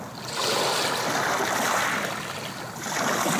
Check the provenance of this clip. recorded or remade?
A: recorded